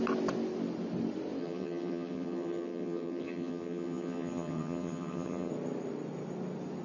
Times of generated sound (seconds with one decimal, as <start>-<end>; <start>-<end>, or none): 1.4-5.5